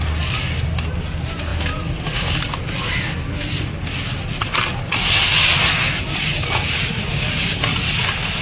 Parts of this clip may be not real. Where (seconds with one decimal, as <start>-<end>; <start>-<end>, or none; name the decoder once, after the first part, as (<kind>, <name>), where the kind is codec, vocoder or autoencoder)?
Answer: none